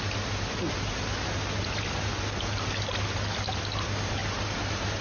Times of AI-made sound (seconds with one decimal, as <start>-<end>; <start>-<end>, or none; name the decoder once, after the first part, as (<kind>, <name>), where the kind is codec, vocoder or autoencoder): none